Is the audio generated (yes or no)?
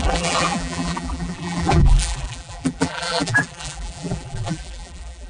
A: yes